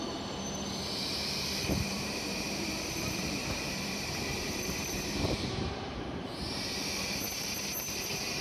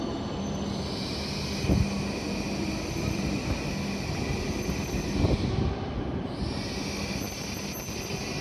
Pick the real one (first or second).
second